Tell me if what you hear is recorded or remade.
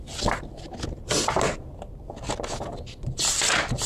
recorded